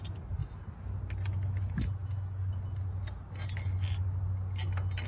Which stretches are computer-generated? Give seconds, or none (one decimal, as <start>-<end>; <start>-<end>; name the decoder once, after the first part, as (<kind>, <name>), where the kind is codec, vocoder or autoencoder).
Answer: none